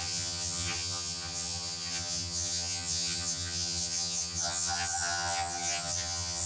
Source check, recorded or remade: remade